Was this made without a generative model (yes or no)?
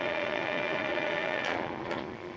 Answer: no